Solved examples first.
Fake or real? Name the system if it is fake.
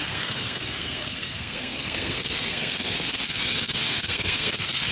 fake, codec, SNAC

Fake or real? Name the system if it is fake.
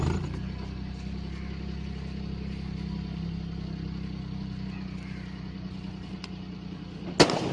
real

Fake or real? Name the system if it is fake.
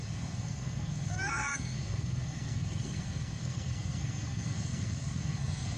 fake, codec, SNAC